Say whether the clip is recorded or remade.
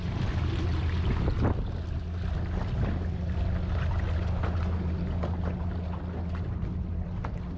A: recorded